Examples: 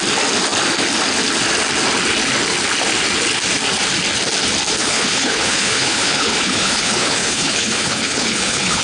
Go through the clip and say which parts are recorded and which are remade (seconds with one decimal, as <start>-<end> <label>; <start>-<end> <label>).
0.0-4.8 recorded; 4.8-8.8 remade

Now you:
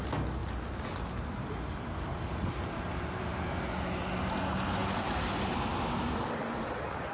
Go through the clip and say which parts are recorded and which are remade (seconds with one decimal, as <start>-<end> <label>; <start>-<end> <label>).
0.0-0.4 recorded; 0.4-3.5 remade; 3.5-7.1 recorded

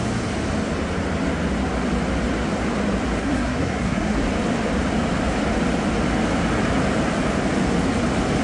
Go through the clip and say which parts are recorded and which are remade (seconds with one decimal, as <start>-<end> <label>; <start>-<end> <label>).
0.0-3.2 recorded; 3.2-4.2 remade; 4.2-8.4 recorded